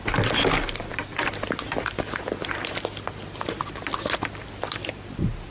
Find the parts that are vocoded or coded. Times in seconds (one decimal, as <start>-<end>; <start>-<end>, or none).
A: none